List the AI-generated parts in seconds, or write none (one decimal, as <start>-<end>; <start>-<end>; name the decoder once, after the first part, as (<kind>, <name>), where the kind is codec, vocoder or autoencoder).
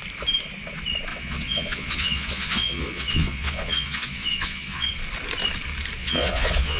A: 1.1-4.9 (vocoder, Vocos); 6.0-6.8